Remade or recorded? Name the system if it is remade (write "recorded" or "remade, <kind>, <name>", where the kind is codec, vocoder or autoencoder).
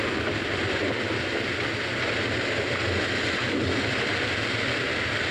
recorded